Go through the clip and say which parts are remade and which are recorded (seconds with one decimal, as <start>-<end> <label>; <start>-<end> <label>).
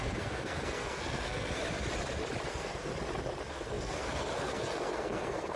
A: 0.0-1.6 remade; 1.6-2.5 recorded; 2.5-2.9 remade; 2.9-3.5 recorded; 3.5-5.6 remade